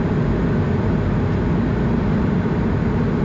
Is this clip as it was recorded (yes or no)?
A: yes